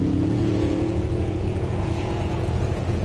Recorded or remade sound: remade